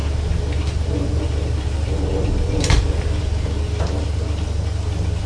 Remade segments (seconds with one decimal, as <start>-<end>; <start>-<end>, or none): 0.0-3.2